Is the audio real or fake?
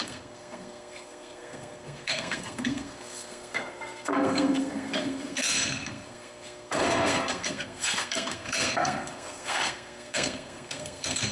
fake